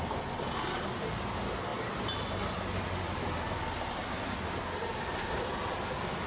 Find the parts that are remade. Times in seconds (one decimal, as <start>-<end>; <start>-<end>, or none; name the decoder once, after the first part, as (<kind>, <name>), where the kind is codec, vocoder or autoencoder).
none

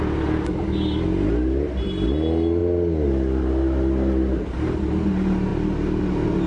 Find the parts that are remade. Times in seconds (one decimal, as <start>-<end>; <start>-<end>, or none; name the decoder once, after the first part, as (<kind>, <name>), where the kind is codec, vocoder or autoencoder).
none

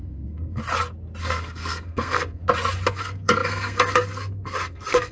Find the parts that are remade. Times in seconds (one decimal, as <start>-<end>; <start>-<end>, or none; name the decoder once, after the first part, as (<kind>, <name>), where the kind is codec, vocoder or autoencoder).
0.0-0.6 (codec, SNAC); 1.2-2.4; 2.9-5.1

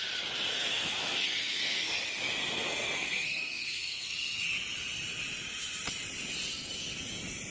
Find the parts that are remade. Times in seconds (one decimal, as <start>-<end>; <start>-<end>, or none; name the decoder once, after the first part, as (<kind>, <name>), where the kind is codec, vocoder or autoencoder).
0.5-1.9 (codec, SNAC); 2.4-4.4

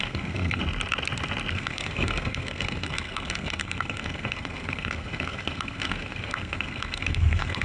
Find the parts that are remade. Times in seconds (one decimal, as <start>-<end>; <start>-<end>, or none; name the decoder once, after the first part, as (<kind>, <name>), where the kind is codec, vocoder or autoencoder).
0.0-0.6 (codec, SNAC); 1.5-7.6

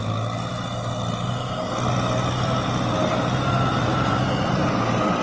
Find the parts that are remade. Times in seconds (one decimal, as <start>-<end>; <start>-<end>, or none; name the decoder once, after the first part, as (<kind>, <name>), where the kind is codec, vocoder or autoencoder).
none

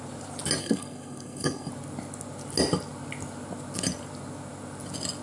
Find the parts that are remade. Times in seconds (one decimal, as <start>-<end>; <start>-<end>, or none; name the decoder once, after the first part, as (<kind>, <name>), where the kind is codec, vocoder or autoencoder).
0.6-1.7 (codec, SNAC)